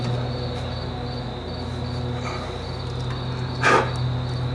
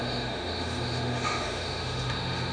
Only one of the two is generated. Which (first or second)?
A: second